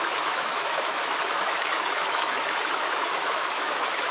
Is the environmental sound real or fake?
fake